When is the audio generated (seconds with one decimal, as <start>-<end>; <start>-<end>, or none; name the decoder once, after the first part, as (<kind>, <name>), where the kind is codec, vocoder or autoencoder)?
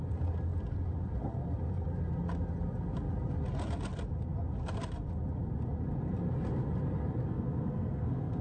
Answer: 7.3-8.4 (codec, SNAC)